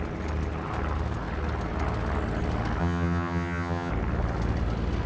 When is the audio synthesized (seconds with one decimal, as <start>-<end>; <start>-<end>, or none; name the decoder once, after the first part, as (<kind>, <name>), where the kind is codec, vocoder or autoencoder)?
2.8-3.9 (vocoder, HiFi-GAN)